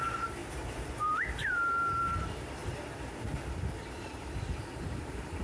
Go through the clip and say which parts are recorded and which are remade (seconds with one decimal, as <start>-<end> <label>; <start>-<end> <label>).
0.0-0.4 recorded; 0.4-1.5 remade; 1.5-2.6 recorded; 2.6-3.2 remade; 3.2-5.4 recorded